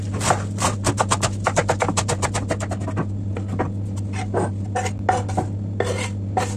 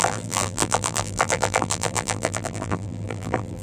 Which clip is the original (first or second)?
first